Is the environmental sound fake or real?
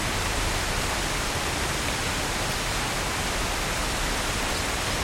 fake